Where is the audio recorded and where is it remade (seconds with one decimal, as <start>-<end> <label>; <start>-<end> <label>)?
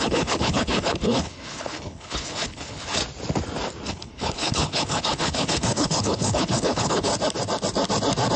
0.0-3.0 remade; 3.0-3.9 recorded; 3.9-7.1 remade; 7.1-8.4 recorded